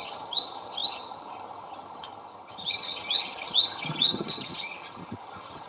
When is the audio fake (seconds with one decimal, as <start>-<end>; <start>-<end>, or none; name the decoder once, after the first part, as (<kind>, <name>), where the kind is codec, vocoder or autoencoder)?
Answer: 0.0-5.7 (vocoder, HiFi-GAN)